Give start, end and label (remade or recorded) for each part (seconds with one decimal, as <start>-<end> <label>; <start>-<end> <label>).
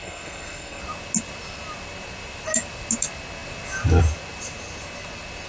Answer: 0.0-0.8 remade; 0.8-5.5 recorded